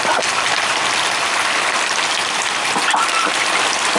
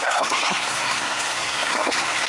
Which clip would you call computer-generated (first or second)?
second